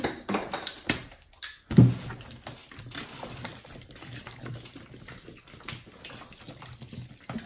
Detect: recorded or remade recorded